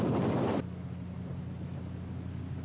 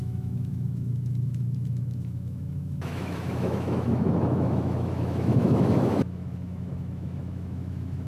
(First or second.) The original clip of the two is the first